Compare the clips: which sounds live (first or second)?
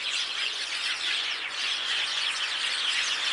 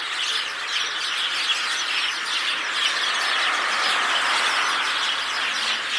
second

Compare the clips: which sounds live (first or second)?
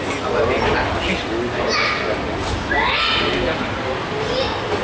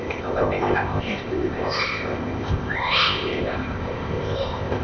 first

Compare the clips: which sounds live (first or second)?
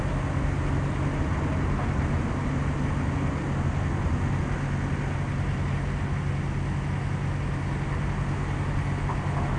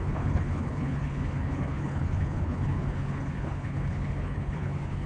first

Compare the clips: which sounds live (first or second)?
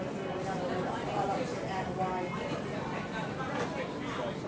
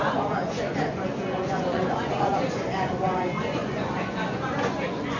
first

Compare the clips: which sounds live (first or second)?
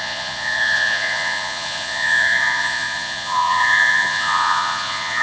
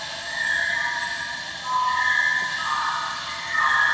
second